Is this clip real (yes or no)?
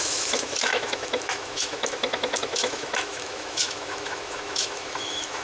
no